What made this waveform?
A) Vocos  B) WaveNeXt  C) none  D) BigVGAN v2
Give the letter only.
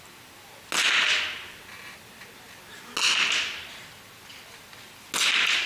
C